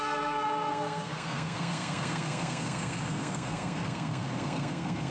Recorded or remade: remade